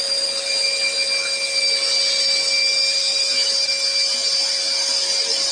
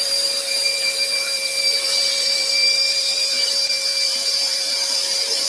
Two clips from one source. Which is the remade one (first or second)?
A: second